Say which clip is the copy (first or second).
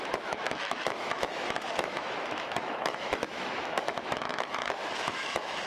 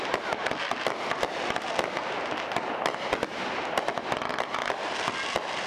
first